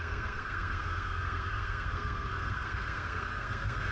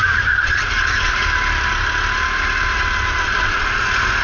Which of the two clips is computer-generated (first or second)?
first